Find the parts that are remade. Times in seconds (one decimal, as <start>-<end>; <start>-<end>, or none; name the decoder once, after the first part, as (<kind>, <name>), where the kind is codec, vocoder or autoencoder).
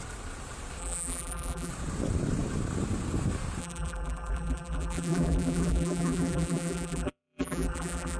0.8-1.7 (vocoder, BigVGAN v2); 3.6-8.2